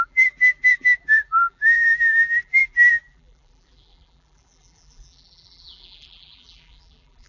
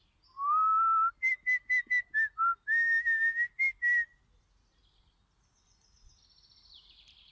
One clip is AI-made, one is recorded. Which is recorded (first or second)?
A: second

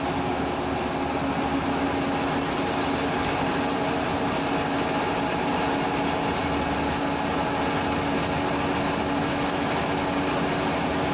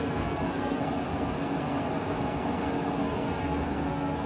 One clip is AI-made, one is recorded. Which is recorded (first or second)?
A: first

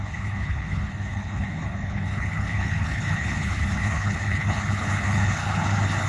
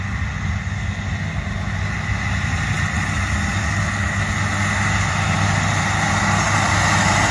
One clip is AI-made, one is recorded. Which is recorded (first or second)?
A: second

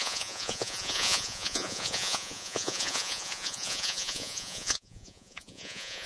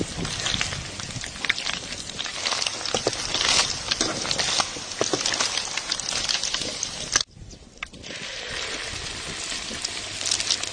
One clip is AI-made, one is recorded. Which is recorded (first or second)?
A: second